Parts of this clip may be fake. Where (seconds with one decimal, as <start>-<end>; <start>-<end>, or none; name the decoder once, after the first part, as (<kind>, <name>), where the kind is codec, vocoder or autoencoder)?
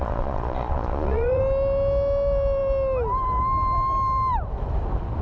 0.0-1.4 (vocoder, Vocos)